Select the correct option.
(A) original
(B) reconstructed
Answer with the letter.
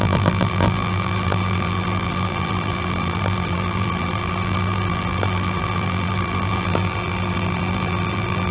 B